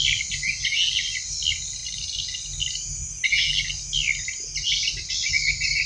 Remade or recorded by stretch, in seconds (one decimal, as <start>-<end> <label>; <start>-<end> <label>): 0.0-5.9 recorded